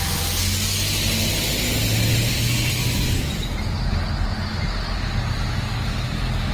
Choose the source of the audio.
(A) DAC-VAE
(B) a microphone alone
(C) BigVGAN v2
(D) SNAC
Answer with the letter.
B